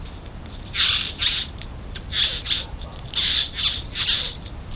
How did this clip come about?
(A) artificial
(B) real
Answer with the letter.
A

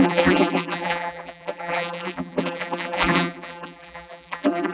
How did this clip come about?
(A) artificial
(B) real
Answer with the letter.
A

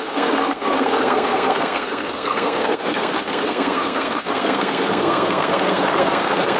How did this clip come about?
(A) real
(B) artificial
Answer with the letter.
B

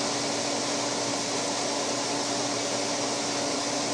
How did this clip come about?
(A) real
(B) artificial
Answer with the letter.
A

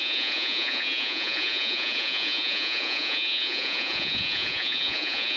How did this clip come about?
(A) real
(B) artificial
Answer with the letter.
B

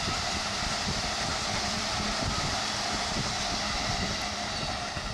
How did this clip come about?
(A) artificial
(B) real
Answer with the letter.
A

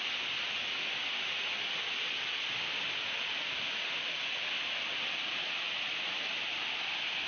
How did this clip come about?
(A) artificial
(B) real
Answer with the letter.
B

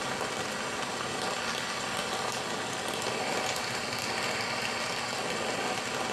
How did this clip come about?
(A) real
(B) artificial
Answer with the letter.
A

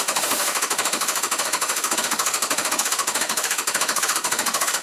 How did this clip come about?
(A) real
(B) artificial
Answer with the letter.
B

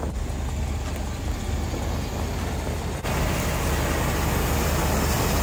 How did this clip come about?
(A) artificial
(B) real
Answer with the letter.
B